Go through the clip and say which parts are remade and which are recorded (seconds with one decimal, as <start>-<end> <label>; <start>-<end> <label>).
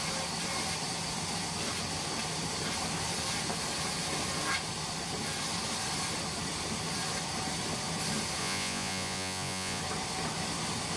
0.0-8.4 recorded; 8.4-9.8 remade; 9.8-11.0 recorded